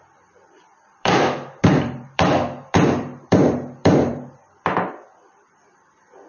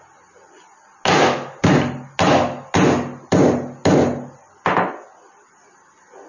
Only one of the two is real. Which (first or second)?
second